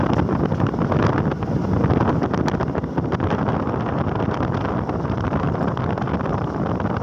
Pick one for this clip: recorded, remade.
recorded